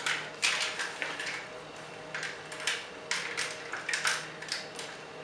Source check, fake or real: real